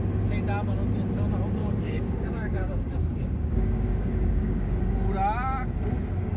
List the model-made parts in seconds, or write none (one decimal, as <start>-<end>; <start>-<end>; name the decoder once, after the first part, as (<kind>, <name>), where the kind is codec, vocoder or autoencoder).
1.6-4.8 (codec, DAC)